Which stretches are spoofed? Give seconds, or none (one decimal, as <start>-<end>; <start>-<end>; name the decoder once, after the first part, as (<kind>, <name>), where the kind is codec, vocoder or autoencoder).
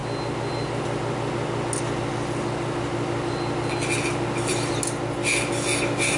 none